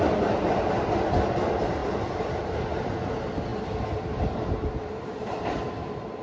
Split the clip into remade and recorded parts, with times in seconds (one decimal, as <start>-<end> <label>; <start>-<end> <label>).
0.0-6.2 recorded